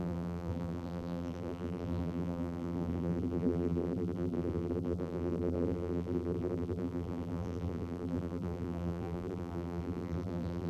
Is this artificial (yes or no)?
yes